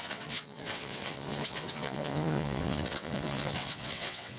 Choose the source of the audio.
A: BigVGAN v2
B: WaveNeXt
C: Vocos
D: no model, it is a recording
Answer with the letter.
B